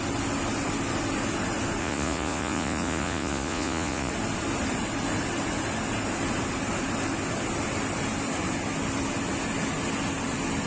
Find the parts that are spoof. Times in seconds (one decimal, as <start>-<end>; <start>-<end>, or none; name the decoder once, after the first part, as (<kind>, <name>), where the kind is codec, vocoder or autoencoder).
1.8-4.1 (vocoder, Vocos)